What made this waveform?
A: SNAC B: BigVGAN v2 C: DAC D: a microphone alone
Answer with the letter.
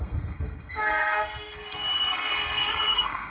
A